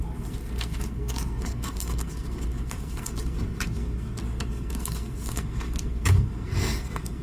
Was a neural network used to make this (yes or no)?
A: yes